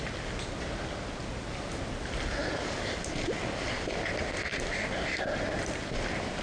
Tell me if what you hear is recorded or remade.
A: recorded